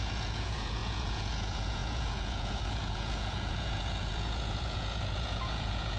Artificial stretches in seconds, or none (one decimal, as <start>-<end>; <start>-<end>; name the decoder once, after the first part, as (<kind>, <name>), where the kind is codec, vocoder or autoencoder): 0.0-6.0 (vocoder, Vocos)